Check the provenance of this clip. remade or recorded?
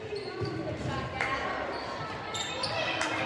recorded